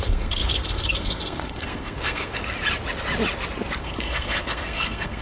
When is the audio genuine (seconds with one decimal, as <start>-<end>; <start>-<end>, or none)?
2.4-3.8